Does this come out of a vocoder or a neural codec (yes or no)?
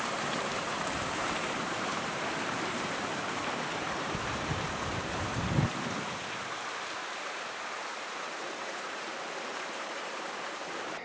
yes